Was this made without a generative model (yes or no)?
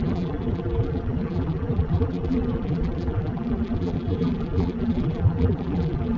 no